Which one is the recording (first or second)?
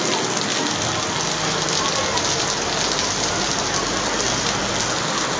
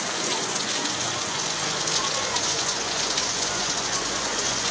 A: first